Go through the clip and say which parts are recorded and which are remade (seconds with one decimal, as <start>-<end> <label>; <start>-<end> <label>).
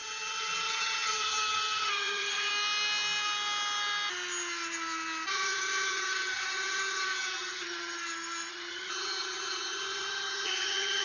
0.0-2.5 remade; 2.5-5.3 recorded; 5.3-8.0 remade; 8.0-8.5 recorded; 8.5-11.0 remade